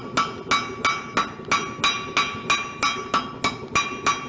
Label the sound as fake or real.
real